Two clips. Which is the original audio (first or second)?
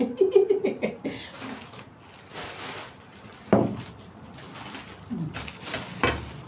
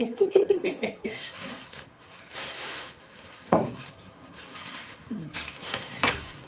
first